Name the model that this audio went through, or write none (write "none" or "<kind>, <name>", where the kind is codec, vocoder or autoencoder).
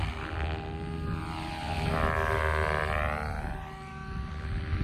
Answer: none